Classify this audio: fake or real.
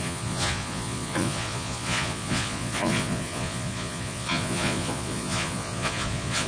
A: fake